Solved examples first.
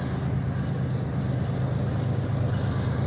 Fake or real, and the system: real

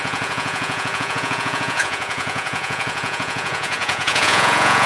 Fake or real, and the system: fake, vocoder, Vocos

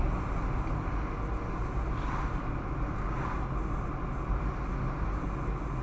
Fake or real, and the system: real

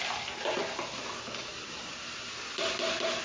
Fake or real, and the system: real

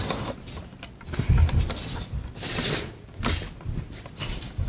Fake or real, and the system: real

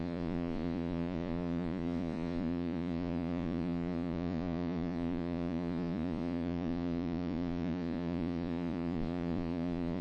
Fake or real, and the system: fake, vocoder, Vocos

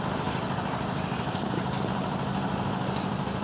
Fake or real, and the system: real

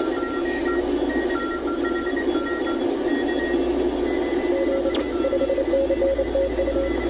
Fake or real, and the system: real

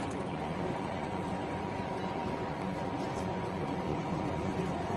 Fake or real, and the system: fake, vocoder, Vocos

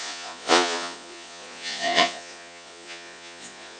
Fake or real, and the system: fake, vocoder, Vocos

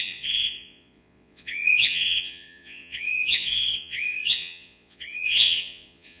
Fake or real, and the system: fake, vocoder, Vocos